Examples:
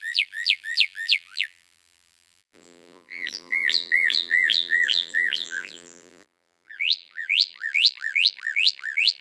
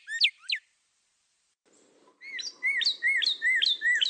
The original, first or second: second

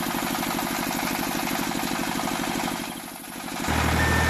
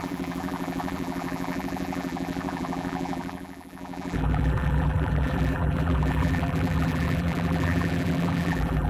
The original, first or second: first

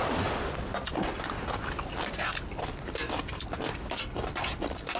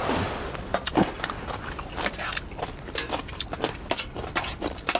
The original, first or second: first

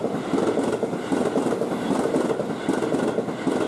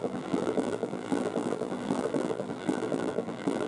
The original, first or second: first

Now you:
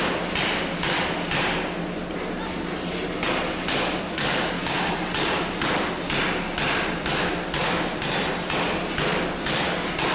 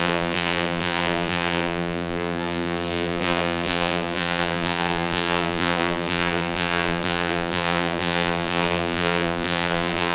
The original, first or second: first